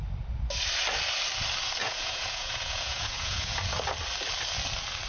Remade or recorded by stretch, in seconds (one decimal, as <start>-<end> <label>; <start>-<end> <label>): 0.0-1.8 recorded; 1.8-3.6 remade; 3.6-5.1 recorded